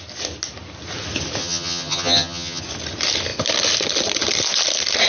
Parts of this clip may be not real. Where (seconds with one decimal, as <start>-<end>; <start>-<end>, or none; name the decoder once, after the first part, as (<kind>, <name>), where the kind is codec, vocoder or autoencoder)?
1.4-2.6 (vocoder, HiFi-GAN)